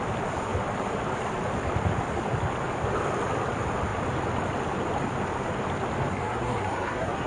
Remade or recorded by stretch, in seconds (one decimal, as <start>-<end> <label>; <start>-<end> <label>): 0.0-6.1 recorded; 6.1-7.3 remade